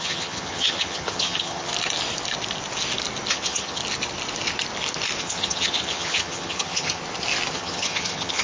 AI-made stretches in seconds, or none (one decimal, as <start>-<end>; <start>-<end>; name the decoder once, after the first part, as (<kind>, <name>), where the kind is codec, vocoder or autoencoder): 0.0-1.7 (vocoder, HiFi-GAN); 3.3-3.8; 5.2-7.0; 7.5-8.4